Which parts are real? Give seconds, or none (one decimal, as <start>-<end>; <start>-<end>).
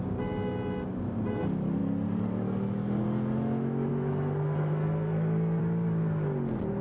0.0-3.9; 5.6-6.8